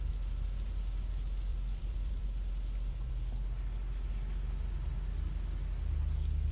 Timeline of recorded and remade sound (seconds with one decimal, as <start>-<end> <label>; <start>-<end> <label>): 0.0-1.5 recorded; 1.5-3.1 remade; 3.1-6.5 recorded

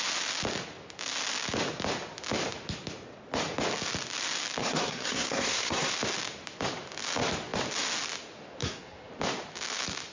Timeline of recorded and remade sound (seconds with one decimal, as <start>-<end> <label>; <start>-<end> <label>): 0.0-4.6 recorded; 4.6-5.9 remade; 5.9-8.6 recorded; 8.6-9.1 remade; 9.1-10.1 recorded

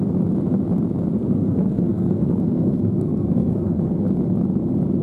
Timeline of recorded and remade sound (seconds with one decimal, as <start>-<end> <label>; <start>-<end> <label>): 0.0-1.2 recorded; 1.2-4.2 remade; 4.2-5.0 recorded

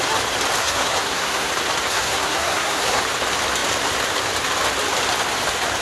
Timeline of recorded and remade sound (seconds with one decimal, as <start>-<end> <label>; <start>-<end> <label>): 0.0-0.6 recorded; 0.6-1.5 remade; 1.5-1.9 recorded; 1.9-3.0 remade; 3.0-5.8 recorded

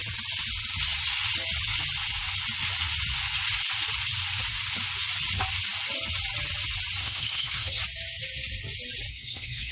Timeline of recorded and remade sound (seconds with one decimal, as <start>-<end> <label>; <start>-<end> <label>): 0.0-7.0 recorded; 7.0-7.8 remade; 7.8-9.1 recorded; 9.1-9.7 remade

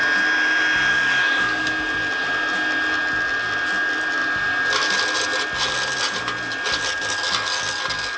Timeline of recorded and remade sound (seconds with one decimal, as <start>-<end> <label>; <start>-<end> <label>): 0.0-0.9 recorded; 0.9-1.7 remade; 1.7-8.2 recorded

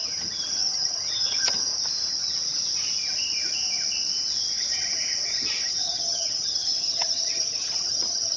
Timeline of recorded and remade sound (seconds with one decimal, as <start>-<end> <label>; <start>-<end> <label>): 0.0-1.7 remade; 1.7-5.7 recorded; 5.7-8.4 remade

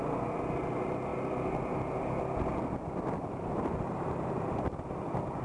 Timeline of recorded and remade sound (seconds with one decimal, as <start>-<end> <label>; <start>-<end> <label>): 0.0-5.4 recorded